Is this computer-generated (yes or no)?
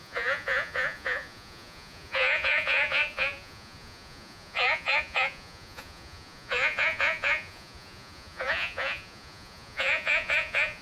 yes